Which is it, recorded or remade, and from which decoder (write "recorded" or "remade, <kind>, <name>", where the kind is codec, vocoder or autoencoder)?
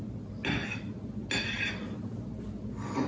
recorded